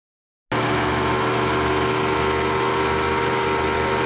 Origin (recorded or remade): recorded